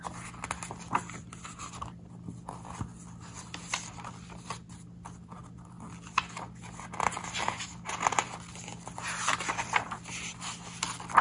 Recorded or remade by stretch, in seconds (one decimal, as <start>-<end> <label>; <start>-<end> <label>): 0.0-11.2 recorded